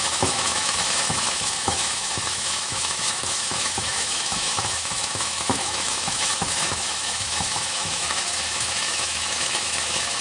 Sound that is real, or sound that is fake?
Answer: fake